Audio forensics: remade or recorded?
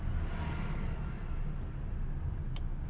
recorded